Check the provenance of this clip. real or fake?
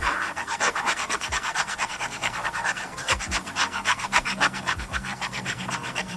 fake